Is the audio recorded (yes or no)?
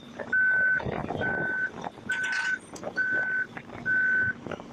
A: yes